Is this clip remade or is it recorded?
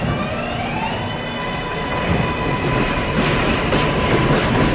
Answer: recorded